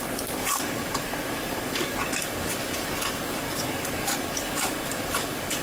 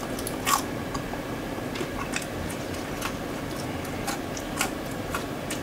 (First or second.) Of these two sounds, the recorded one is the second